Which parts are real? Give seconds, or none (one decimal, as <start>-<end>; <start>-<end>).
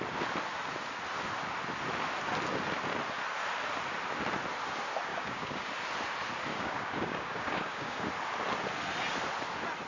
0.0-5.1; 5.7-6.5; 8.1-9.9